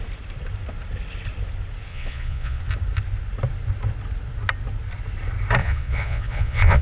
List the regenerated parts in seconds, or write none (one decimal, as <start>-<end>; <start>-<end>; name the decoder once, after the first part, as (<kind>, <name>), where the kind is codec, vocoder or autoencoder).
1.9-2.6 (vocoder, Vocos); 5.6-6.8